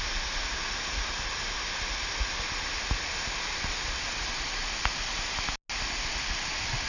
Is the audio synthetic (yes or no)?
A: no